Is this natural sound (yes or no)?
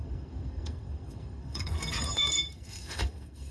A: no